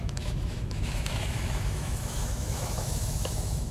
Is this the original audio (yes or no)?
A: no